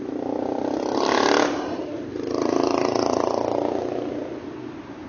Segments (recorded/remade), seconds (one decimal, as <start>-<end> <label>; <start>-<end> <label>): 0.0-5.1 recorded

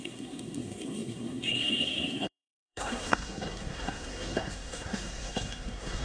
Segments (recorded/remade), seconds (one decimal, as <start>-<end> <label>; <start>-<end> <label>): 0.0-6.0 remade

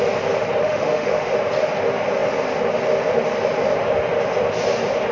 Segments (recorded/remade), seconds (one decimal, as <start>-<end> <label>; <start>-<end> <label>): 0.0-0.6 recorded; 0.6-1.3 remade; 1.3-5.1 recorded

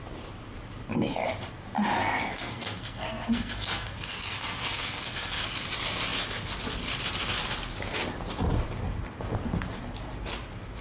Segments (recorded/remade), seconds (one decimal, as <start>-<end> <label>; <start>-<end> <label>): 0.0-2.0 recorded; 2.0-5.4 remade; 5.4-10.8 recorded

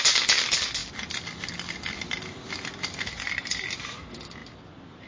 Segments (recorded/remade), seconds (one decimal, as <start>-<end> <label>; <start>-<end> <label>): 0.0-5.1 recorded

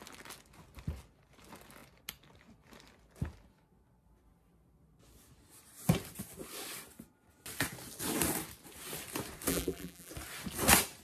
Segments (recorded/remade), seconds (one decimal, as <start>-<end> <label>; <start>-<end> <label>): 0.0-9.5 recorded; 9.5-10.1 remade; 10.1-11.0 recorded